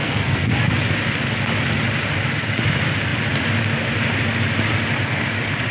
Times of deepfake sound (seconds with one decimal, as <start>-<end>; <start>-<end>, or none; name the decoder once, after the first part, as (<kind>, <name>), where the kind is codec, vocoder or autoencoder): 0.0-0.5 (codec, SNAC)